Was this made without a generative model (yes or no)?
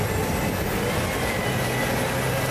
yes